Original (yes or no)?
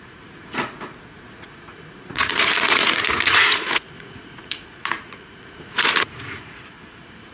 no